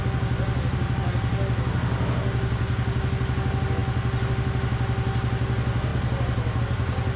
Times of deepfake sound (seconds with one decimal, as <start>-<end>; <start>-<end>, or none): none